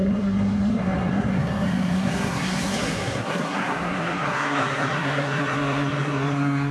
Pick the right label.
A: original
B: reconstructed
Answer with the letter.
B